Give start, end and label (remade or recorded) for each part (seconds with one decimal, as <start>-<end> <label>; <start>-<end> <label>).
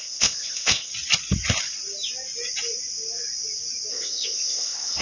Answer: 0.0-0.9 remade; 0.9-3.9 recorded; 3.9-5.0 remade